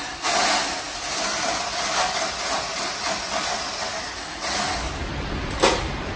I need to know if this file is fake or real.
real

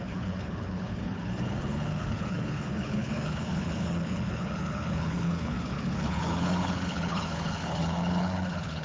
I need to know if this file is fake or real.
fake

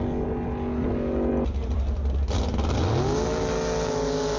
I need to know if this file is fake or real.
real